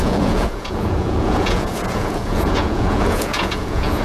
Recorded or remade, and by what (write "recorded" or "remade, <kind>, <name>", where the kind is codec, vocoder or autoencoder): remade, vocoder, Vocos